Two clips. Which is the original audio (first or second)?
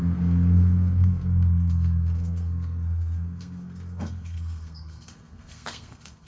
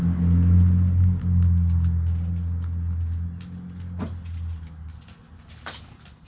second